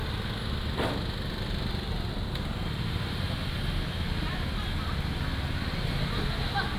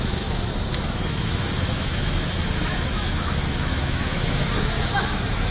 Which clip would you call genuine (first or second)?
first